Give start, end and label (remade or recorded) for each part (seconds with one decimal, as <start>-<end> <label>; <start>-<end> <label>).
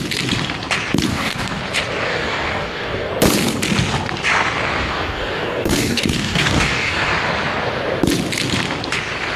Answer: 0.0-1.1 recorded; 1.1-1.6 remade; 1.6-2.1 recorded; 2.1-3.1 remade; 3.1-4.8 recorded; 4.8-7.1 remade; 7.1-9.4 recorded